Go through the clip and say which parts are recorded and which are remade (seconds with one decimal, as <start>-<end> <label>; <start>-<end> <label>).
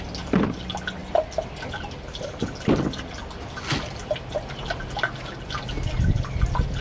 0.0-6.8 recorded